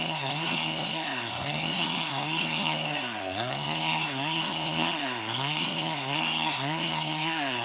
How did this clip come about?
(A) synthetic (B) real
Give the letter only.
A